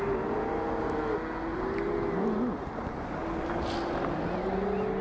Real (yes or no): yes